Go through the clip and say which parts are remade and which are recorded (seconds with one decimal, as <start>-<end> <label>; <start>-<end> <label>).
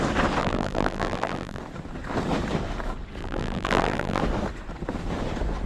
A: 0.0-0.4 recorded; 0.4-1.6 remade; 1.6-3.2 recorded; 3.2-4.2 remade; 4.2-5.7 recorded